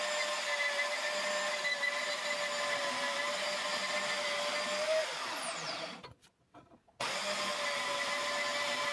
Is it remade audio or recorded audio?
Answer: recorded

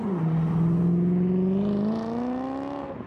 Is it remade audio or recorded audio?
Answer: recorded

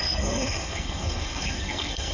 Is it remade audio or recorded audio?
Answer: remade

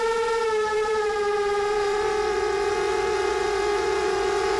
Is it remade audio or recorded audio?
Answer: remade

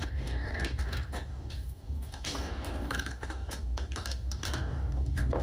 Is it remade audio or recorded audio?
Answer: remade